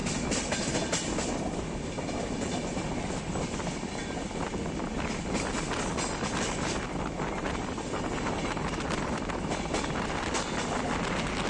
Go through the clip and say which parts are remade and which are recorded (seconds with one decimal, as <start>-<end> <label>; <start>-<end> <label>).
0.0-0.6 remade; 0.6-11.5 recorded